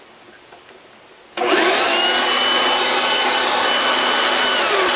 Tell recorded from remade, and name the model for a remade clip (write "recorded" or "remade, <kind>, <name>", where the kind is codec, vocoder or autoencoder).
remade, vocoder, BigVGAN v2